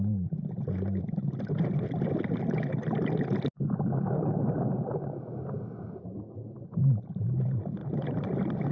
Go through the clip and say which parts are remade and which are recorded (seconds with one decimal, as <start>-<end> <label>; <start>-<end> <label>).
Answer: 0.0-8.7 recorded